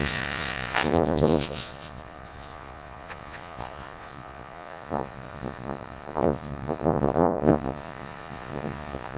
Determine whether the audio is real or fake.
fake